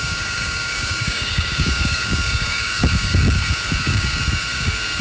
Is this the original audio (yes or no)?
no